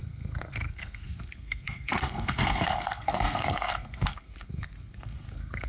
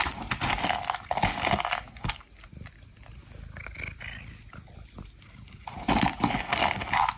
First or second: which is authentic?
second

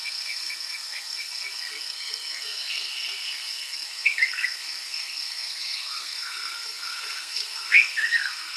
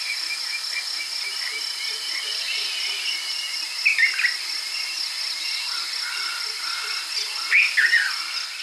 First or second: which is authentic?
second